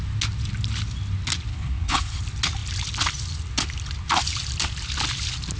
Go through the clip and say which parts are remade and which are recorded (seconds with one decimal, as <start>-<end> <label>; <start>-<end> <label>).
0.0-1.5 recorded; 1.5-2.2 remade; 2.2-5.6 recorded